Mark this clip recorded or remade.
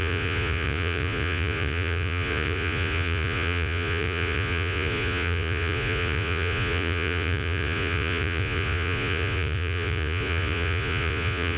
remade